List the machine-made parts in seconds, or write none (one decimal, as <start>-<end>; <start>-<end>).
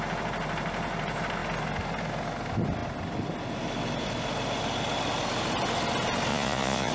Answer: 6.3-6.9